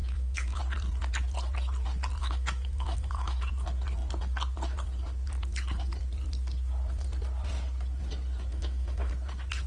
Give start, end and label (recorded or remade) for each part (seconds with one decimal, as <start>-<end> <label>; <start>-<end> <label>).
0.0-0.6 remade; 0.6-2.2 recorded; 2.2-3.5 remade; 3.5-8.5 recorded; 8.5-9.1 remade; 9.1-9.7 recorded